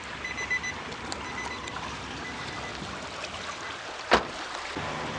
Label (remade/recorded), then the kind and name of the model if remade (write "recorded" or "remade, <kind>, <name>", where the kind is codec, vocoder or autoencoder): recorded